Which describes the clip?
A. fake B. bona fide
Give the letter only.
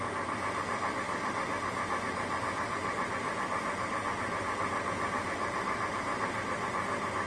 B